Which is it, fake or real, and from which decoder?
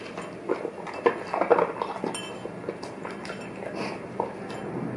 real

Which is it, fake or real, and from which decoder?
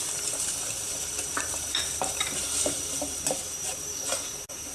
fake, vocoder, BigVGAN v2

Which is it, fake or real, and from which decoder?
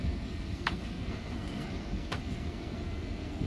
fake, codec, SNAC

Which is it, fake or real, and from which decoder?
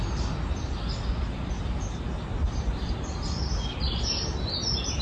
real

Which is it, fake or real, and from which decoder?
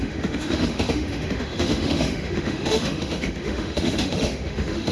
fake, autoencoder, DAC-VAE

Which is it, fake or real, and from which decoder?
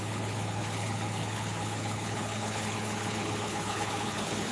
fake, codec, HILCodec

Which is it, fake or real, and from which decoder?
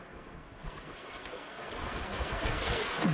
fake, codec, SNAC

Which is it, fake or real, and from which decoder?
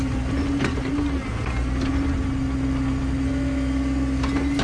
real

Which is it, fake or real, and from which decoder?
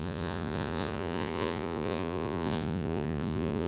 fake, vocoder, Vocos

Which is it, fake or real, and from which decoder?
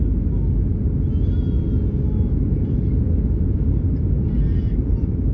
real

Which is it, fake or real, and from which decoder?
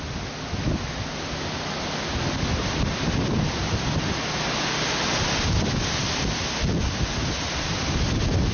real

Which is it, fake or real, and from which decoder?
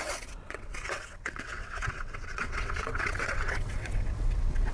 fake, vocoder, WaveNeXt